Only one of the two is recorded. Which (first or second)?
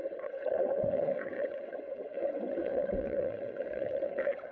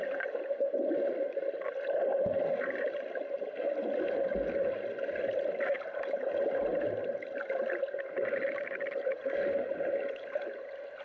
second